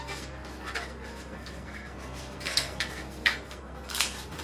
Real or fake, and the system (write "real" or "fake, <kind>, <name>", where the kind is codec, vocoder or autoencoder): fake, codec, SNAC